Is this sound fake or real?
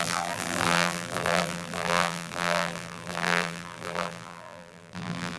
fake